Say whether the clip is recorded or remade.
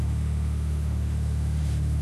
remade